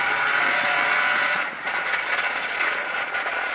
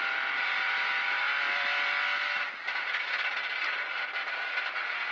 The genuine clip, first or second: second